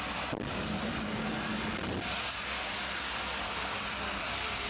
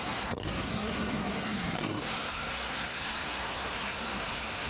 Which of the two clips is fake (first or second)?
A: second